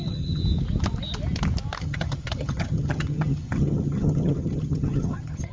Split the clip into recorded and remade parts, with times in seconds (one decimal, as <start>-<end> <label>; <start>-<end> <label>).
0.0-0.4 remade; 0.4-1.8 recorded; 1.8-5.5 remade